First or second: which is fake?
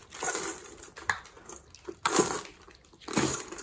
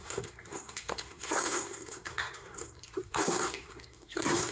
second